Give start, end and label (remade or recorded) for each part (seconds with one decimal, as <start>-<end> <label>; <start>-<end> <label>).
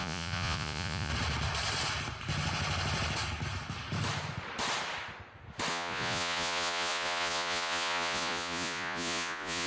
0.0-1.1 remade; 1.1-5.7 recorded; 5.7-9.7 remade